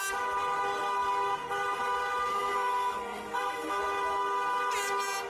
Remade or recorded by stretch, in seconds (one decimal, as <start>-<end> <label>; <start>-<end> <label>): 0.0-2.3 recorded; 2.3-3.8 remade; 3.8-5.3 recorded